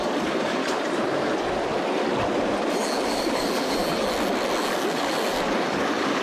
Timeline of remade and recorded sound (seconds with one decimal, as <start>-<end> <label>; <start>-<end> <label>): 0.0-0.6 remade; 0.6-3.1 recorded; 3.1-3.8 remade; 3.8-4.7 recorded; 4.7-6.2 remade